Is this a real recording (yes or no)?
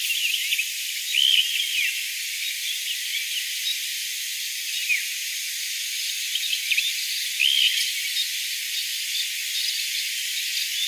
yes